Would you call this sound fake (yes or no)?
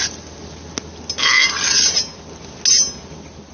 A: no